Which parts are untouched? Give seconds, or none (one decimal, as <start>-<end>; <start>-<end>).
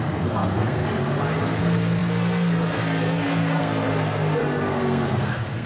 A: 0.8-1.6